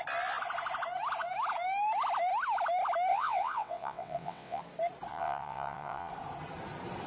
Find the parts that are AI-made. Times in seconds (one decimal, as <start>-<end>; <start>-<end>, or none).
3.1-4.6; 5.1-6.1